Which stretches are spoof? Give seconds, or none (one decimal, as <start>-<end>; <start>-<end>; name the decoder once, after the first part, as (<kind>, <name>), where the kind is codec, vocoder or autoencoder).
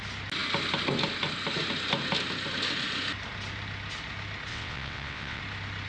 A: 4.5-5.4 (vocoder, WaveNeXt)